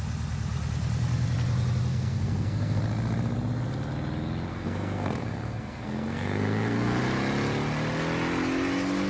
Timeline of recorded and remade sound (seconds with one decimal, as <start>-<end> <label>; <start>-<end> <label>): 0.0-1.9 recorded; 1.9-2.8 remade; 2.8-4.5 recorded; 4.5-7.0 remade; 7.0-9.1 recorded